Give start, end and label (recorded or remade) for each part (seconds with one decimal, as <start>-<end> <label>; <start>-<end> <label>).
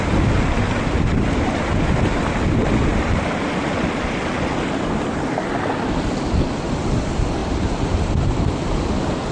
0.0-2.8 recorded; 2.8-4.2 remade; 4.2-7.4 recorded; 7.4-8.9 remade; 8.9-9.3 recorded